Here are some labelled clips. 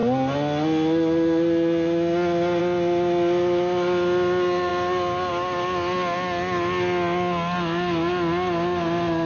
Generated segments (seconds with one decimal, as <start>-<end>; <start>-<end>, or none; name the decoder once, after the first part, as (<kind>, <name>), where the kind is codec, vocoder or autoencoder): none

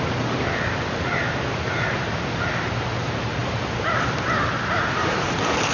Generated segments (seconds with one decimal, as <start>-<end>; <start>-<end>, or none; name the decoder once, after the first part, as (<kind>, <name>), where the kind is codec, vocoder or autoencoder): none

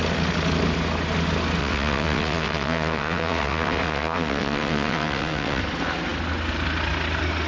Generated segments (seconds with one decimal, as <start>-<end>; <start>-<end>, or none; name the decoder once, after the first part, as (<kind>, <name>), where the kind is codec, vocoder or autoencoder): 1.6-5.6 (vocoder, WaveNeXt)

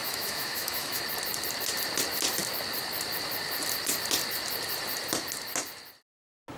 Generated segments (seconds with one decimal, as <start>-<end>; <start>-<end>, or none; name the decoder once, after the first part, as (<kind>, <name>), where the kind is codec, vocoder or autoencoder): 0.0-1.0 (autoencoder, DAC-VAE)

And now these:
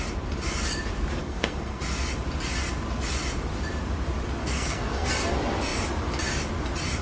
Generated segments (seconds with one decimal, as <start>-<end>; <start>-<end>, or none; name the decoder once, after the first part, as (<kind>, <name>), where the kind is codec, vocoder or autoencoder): 1.2-1.8 (codec, SNAC); 4.4-5.1